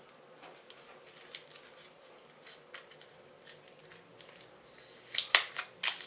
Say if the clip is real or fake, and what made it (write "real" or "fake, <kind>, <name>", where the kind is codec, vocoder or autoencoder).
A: real